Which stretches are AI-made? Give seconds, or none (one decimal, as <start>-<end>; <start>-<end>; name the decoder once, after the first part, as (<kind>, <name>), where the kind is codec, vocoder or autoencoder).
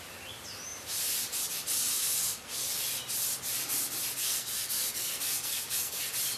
1.9-2.8 (codec, SNAC); 4.2-6.0